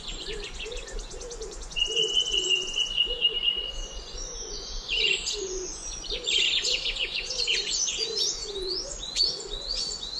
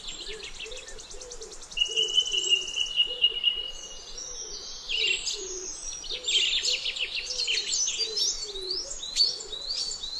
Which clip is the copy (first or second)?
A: first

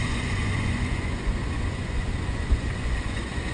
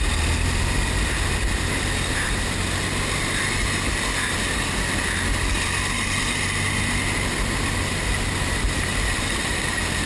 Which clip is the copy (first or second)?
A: first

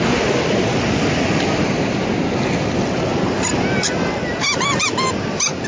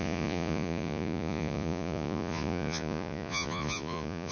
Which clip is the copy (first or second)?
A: second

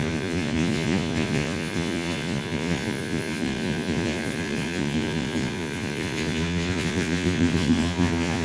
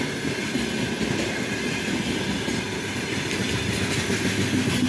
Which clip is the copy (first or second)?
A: first